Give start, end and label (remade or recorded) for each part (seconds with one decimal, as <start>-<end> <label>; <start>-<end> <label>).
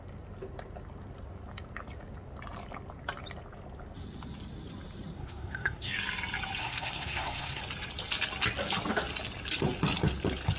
0.0-5.2 recorded; 5.2-5.9 remade; 5.9-6.6 recorded; 6.6-7.6 remade; 7.6-10.6 recorded